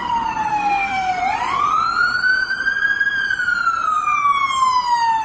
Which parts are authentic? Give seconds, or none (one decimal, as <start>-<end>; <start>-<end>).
0.0-0.5; 1.2-5.2